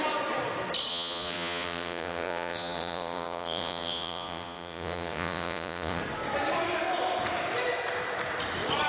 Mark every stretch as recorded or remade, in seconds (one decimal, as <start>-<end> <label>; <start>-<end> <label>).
0.0-0.9 recorded; 0.9-6.0 remade; 6.0-8.9 recorded